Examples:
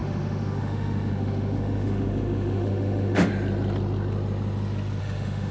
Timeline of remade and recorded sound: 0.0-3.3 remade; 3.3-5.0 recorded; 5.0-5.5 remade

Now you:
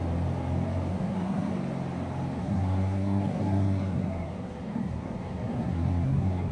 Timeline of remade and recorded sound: 0.0-0.9 recorded; 0.9-1.5 remade; 1.5-2.4 recorded; 2.4-6.5 remade

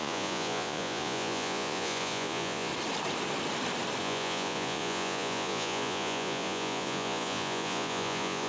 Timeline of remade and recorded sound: 0.0-2.7 remade; 2.7-4.0 recorded; 4.0-8.5 remade

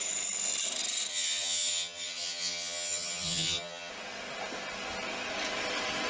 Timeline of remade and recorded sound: 0.0-1.1 recorded; 1.1-3.9 remade; 3.9-6.1 recorded

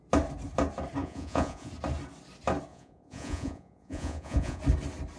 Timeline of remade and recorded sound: 0.0-1.0 recorded; 1.0-1.7 remade; 1.7-2.7 recorded; 2.7-4.6 remade; 4.6-5.2 recorded

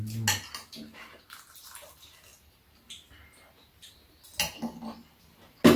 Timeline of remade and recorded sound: 0.0-5.8 recorded

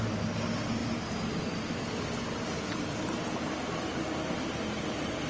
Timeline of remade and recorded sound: 0.0-5.3 recorded